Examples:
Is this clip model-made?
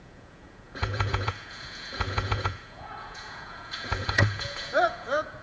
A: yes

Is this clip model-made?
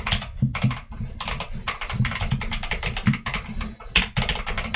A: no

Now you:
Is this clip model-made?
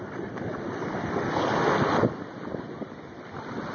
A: no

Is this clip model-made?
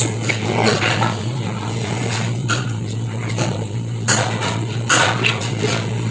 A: yes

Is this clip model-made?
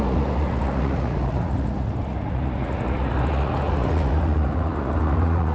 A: yes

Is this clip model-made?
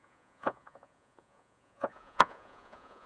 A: yes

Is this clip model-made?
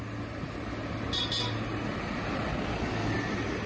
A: no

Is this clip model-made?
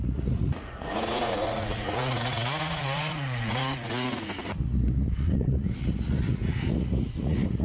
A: yes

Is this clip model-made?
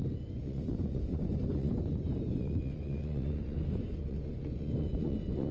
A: yes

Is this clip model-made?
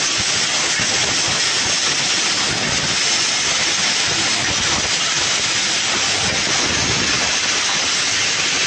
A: no